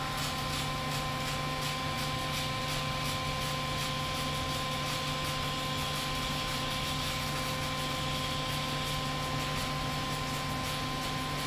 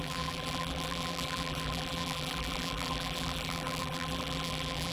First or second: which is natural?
first